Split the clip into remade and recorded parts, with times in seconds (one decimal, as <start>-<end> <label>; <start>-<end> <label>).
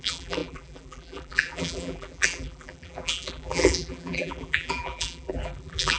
0.0-6.0 remade